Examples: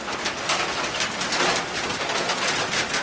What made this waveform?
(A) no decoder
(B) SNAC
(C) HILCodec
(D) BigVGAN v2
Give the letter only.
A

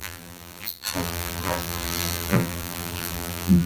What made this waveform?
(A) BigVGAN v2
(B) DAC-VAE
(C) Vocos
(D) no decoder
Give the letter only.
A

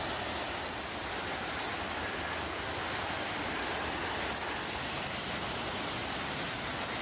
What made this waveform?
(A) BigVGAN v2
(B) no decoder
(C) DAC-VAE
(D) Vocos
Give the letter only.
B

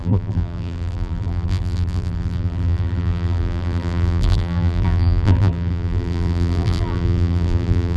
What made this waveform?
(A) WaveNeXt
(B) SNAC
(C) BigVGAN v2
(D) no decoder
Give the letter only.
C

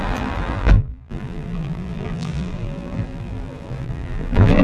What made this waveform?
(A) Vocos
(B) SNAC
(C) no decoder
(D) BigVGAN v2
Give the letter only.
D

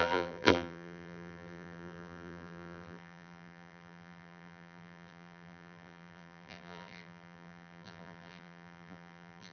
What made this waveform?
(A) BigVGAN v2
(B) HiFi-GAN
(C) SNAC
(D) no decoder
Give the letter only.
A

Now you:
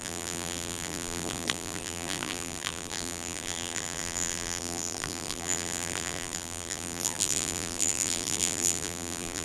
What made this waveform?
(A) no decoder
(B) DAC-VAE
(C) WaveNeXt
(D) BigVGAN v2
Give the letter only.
D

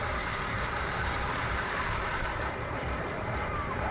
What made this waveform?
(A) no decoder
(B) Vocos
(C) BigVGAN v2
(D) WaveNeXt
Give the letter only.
C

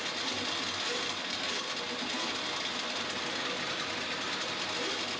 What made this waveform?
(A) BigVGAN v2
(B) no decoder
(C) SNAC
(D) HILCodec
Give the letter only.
B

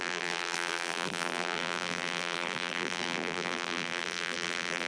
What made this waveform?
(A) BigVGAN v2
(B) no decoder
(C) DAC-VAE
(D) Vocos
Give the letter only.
A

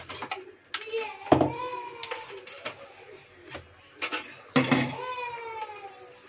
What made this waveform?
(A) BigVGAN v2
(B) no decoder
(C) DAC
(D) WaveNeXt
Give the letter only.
B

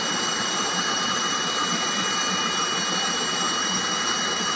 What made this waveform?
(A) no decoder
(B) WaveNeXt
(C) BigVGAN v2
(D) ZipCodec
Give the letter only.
C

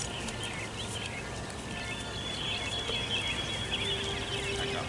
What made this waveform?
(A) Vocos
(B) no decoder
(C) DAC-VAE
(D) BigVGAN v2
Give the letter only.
B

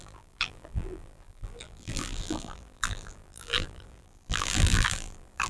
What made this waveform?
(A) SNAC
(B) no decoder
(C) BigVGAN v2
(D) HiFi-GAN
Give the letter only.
C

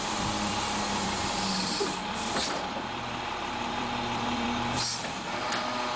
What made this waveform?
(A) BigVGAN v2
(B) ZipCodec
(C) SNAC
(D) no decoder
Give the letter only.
A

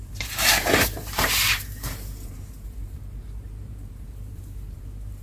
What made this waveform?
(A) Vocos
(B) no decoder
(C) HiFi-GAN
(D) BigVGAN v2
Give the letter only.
D